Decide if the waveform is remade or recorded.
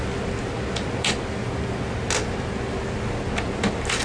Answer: recorded